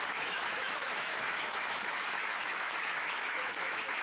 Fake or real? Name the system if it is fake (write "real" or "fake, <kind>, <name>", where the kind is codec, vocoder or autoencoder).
fake, autoencoder, DAC-VAE